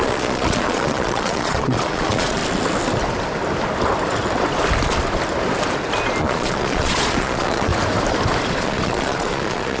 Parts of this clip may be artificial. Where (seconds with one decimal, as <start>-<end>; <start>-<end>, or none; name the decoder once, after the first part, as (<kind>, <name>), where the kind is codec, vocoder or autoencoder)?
0.0-2.4 (vocoder, Vocos); 6.2-7.7; 8.6-9.8